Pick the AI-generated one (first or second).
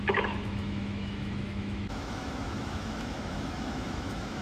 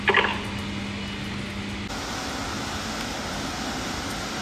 first